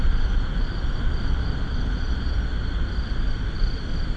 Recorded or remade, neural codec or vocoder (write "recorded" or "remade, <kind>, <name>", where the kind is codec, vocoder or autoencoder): recorded